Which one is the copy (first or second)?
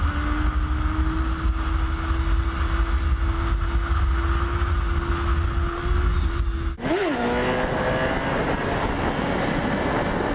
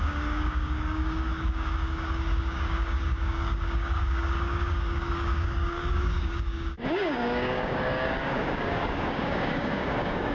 second